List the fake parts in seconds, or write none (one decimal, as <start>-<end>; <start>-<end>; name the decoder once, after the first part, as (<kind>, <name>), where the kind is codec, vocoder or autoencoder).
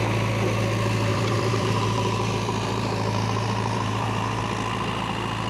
1.1-4.4 (vocoder, BigVGAN v2)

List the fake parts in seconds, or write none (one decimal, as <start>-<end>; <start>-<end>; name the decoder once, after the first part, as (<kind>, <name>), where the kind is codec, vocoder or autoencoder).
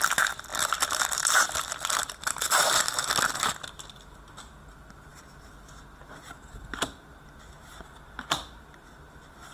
0.5-3.1 (vocoder, BigVGAN v2)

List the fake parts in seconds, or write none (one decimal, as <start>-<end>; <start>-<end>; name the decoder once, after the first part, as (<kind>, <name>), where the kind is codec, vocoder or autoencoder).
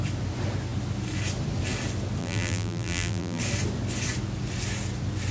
2.2-3.4 (vocoder, BigVGAN v2)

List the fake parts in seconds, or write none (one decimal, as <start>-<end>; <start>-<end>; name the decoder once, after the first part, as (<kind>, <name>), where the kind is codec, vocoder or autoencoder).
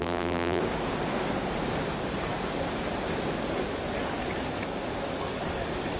0.0-0.6 (vocoder, BigVGAN v2)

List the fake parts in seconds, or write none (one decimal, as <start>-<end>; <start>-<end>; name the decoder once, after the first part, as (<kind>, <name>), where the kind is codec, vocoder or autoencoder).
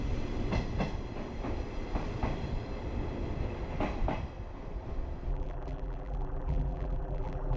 5.3-7.6 (vocoder, BigVGAN v2)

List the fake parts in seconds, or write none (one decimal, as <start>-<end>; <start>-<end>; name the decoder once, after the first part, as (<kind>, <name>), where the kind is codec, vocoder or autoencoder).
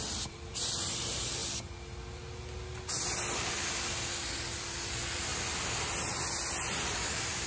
0.0-1.4 (vocoder, BigVGAN v2); 3.3-5.3; 5.9-7.5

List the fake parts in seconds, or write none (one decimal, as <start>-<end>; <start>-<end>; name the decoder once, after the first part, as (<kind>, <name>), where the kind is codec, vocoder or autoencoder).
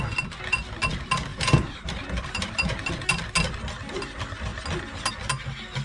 1.3-2.9 (vocoder, BigVGAN v2)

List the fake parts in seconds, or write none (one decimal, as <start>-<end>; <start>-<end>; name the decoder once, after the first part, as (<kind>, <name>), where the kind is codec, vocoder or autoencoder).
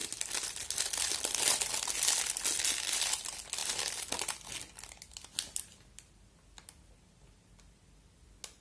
none